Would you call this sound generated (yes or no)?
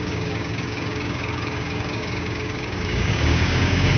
yes